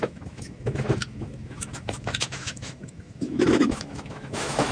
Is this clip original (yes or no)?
no